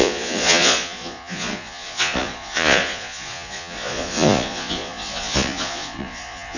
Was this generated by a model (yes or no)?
yes